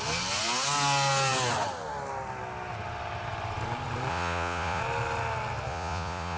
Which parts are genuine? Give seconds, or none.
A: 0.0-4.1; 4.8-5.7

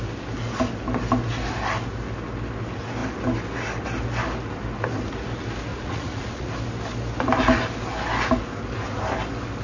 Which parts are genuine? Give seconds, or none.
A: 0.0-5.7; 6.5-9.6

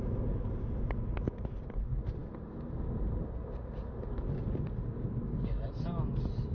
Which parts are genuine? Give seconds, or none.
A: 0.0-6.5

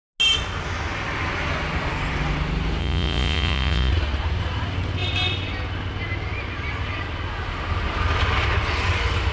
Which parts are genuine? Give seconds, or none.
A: 0.0-2.8; 3.9-9.3

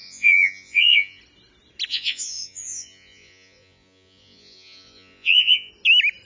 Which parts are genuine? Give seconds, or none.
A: 1.2-1.9; 5.7-6.3